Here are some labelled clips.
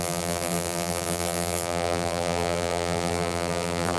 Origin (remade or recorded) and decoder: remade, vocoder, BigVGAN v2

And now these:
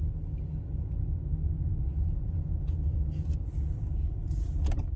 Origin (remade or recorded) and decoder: recorded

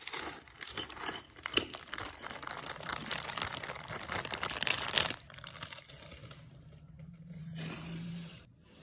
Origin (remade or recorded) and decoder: remade, vocoder, BigVGAN v2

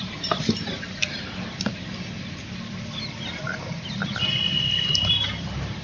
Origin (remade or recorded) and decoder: remade, vocoder, BigVGAN v2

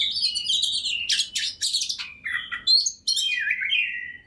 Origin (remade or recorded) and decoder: recorded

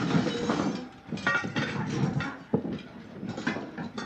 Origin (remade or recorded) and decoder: recorded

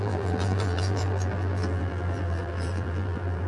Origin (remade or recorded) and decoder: remade, vocoder, BigVGAN v2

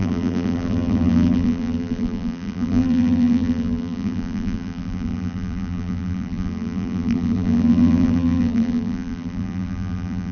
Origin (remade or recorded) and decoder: remade, vocoder, BigVGAN v2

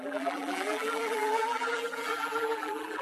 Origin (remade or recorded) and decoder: remade, vocoder, BigVGAN v2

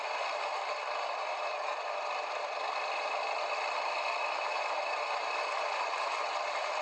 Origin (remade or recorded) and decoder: remade, vocoder, BigVGAN v2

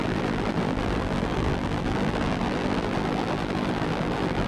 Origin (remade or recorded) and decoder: remade, vocoder, BigVGAN v2